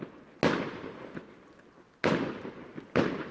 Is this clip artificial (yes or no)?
no